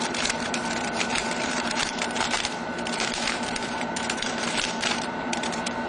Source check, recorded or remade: remade